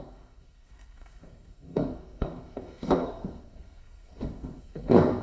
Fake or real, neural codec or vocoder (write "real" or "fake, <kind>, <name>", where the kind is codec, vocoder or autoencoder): fake, codec, SNAC